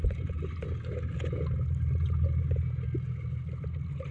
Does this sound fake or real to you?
real